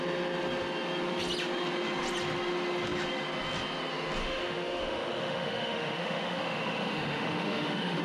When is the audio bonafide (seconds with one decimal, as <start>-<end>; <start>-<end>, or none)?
0.0-4.2